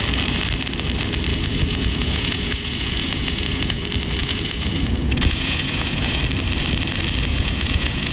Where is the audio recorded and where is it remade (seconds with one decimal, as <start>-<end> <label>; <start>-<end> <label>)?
0.0-1.3 recorded; 1.3-3.8 remade; 3.8-4.2 recorded; 4.2-6.2 remade; 6.2-7.3 recorded; 7.3-8.1 remade